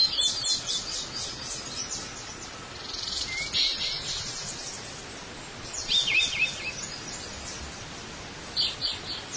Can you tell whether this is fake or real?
real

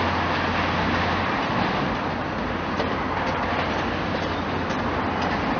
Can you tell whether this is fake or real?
real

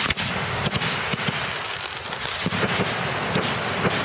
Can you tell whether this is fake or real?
real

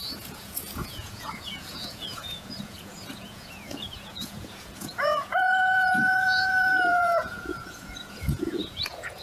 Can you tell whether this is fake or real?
fake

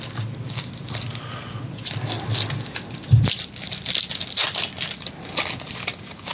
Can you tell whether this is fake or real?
real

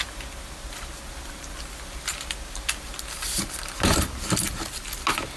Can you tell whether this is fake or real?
real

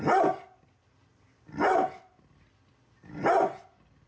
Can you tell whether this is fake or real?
real